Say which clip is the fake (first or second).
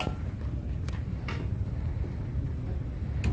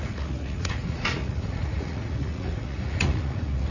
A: second